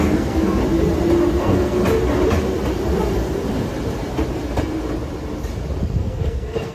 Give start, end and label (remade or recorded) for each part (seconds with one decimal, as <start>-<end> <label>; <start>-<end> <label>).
0.0-0.6 remade; 0.6-1.4 recorded; 1.4-1.8 remade; 1.8-5.8 recorded; 5.8-6.7 remade